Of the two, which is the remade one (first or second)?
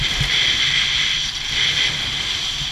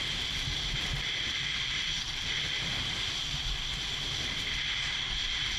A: second